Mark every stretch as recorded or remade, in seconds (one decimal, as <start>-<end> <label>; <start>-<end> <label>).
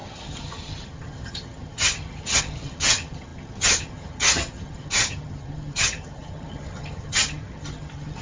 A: 0.0-8.2 remade